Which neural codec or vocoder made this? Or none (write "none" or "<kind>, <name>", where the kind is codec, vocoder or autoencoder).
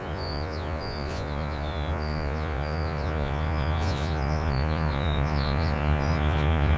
vocoder, Vocos